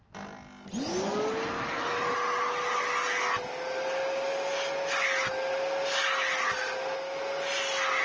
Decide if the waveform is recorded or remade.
recorded